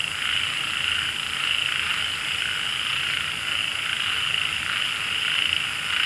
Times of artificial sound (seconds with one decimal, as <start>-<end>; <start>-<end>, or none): none

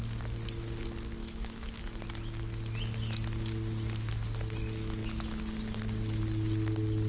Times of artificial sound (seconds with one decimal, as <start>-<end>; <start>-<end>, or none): 1.2-2.0

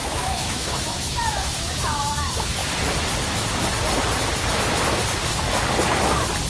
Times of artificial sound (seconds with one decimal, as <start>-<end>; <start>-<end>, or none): 0.0-2.6

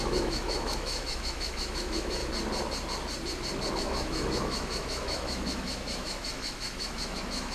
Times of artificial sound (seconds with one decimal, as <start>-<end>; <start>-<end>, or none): 0.0-2.2; 3.7-7.5